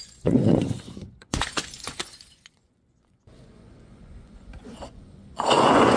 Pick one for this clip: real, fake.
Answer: fake